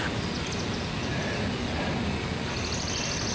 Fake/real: real